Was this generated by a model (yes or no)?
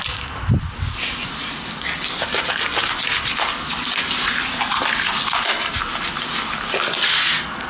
no